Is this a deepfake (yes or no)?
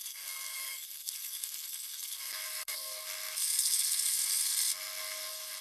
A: yes